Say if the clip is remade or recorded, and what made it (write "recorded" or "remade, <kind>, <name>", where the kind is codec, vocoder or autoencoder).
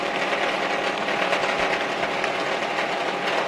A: recorded